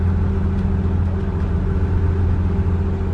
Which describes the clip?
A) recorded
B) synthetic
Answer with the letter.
A